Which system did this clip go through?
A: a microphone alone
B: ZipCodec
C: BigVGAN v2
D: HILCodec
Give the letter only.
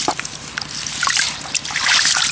A